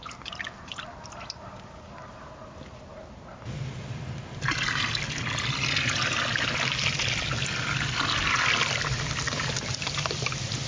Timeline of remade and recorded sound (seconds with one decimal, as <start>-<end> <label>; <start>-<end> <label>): 0.0-10.7 recorded